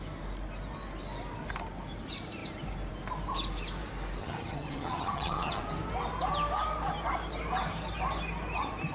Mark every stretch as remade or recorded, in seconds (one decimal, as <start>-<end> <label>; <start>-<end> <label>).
0.0-4.2 recorded; 4.2-5.6 remade; 5.6-8.9 recorded